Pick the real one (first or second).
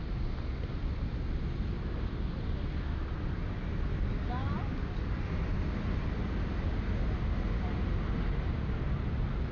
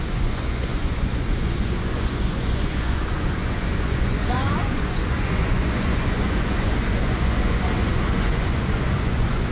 first